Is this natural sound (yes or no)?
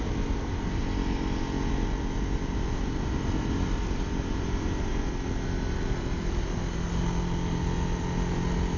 yes